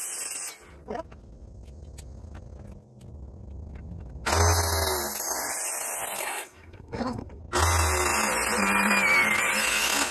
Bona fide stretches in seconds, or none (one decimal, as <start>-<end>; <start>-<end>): 0.0-6.2; 7.4-10.1